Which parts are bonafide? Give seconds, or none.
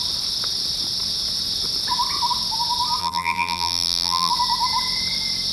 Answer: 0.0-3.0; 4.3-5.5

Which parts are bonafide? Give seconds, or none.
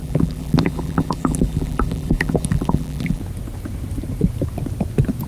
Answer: 3.2-5.3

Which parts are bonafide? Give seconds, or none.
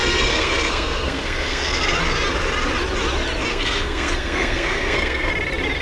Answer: 2.0-3.5; 5.3-5.8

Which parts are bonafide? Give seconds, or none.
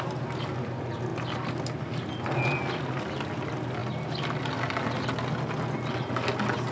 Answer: 0.0-6.7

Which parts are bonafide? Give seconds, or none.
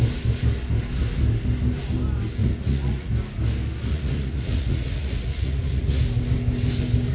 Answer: 0.0-2.4; 3.1-3.9; 6.0-7.1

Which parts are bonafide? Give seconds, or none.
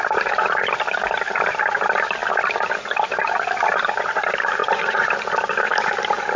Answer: 0.0-4.6; 5.1-6.4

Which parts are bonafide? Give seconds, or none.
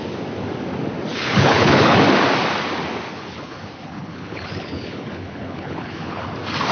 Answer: 0.0-1.1; 2.0-3.1; 6.3-6.7